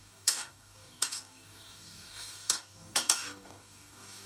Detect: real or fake fake